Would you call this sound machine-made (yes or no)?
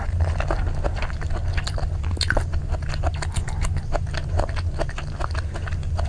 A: no